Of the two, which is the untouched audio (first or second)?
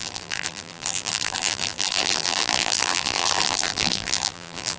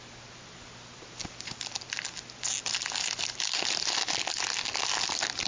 second